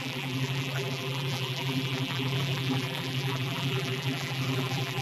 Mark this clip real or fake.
fake